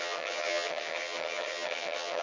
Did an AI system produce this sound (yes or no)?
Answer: yes